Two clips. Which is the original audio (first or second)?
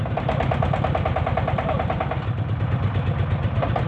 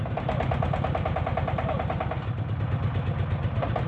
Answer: second